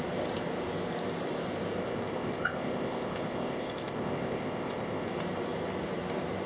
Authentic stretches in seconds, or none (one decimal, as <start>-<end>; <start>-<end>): 0.0-1.8; 5.1-6.5